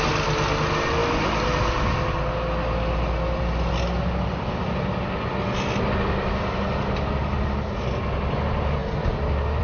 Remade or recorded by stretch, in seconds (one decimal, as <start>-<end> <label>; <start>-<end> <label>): 0.0-9.6 recorded